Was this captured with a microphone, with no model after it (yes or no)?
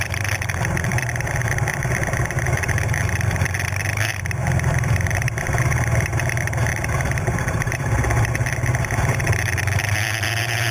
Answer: no